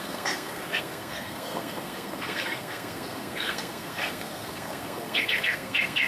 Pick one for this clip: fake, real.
fake